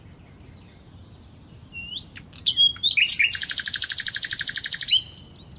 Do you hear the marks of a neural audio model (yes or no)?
no